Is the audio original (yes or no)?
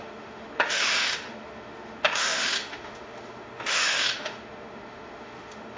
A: no